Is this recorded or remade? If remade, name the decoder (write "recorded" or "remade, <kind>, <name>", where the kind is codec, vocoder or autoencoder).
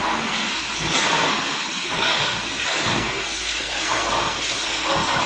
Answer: remade, codec, SNAC